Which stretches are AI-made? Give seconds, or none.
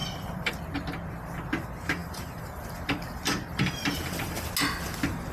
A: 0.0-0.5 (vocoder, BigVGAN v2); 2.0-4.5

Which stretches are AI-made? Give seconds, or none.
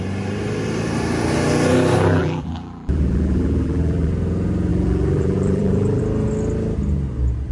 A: 2.2-4.1 (vocoder, BigVGAN v2); 4.7-6.0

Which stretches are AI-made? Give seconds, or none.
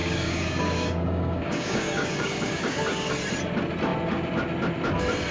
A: 0.0-3.1 (codec, DAC)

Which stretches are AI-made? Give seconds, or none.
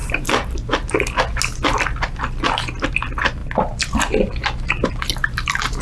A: 0.0-0.5 (vocoder, BigVGAN v2)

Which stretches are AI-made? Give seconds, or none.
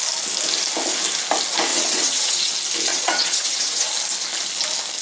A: 1.7-2.5 (vocoder, WaveNeXt); 2.9-3.9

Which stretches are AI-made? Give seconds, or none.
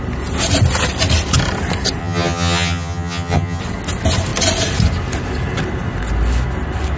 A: 2.0-3.6 (vocoder, HiFi-GAN)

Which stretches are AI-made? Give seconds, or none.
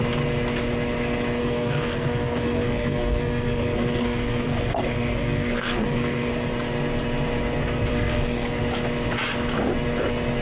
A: 1.4-6.3 (codec, SNAC); 7.9-8.6